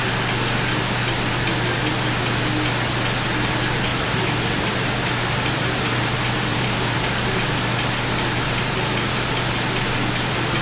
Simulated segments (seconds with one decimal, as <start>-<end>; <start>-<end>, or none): 3.9-7.1